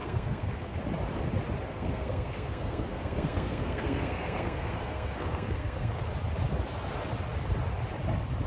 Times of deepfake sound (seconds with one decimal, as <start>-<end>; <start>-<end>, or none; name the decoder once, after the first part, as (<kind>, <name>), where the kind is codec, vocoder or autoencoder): 0.0-0.8 (codec, SNAC); 1.7-6.0